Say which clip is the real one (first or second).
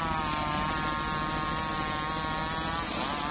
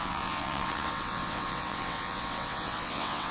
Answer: first